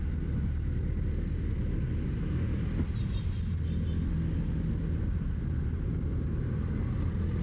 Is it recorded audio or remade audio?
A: recorded